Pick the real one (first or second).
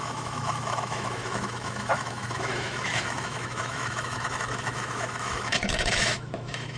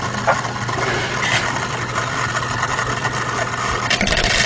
second